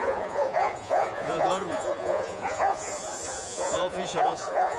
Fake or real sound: fake